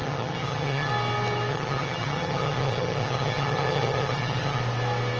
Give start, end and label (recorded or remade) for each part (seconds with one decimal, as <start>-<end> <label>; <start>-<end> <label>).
0.0-0.9 remade; 0.9-1.5 recorded; 1.5-4.6 remade; 4.6-5.2 recorded